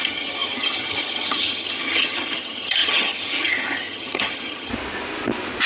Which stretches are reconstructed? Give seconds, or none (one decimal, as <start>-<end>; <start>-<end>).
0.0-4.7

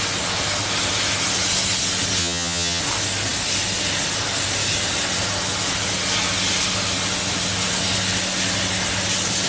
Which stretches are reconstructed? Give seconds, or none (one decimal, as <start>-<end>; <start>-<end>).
2.2-2.8

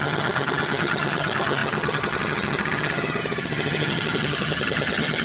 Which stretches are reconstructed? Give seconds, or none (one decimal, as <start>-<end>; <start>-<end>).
0.0-5.2

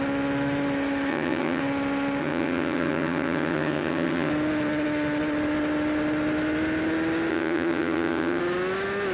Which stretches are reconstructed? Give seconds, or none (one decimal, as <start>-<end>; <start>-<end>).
1.1-1.6; 2.2-4.3; 7.3-8.4